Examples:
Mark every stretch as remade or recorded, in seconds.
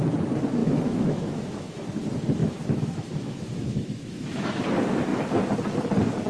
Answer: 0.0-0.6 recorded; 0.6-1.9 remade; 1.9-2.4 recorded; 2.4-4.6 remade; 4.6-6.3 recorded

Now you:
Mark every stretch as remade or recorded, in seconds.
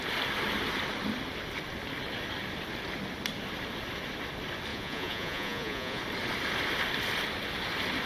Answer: 0.0-4.7 recorded; 4.7-6.0 remade; 6.0-8.1 recorded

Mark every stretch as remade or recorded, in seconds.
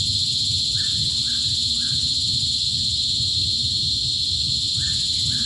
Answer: 0.0-5.5 recorded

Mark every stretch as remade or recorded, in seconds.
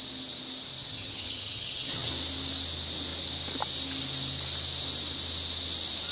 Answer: 0.0-0.8 recorded; 0.8-2.1 remade; 2.1-6.1 recorded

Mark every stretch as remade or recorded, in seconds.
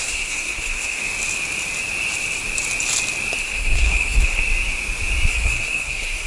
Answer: 0.0-1.0 remade; 1.0-3.4 recorded; 3.4-4.4 remade; 4.4-5.3 recorded; 5.3-6.3 remade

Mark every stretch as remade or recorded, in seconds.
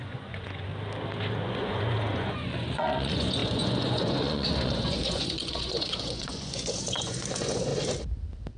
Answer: 0.0-0.7 remade; 0.7-1.3 recorded; 1.3-7.7 remade; 7.7-8.6 recorded